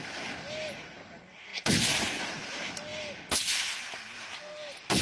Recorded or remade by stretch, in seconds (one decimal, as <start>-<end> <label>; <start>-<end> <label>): 0.0-5.0 recorded